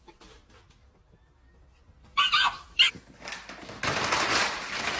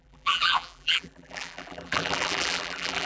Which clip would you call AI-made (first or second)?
second